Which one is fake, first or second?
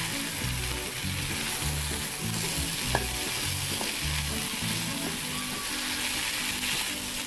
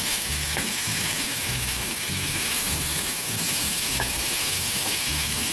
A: second